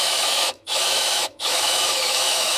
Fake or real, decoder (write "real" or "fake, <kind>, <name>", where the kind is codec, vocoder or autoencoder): fake, autoencoder, DAC-VAE